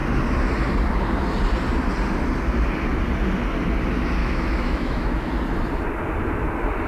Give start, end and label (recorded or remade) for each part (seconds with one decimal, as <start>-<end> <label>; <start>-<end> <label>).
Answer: 0.0-4.2 recorded; 4.2-5.3 remade; 5.3-6.9 recorded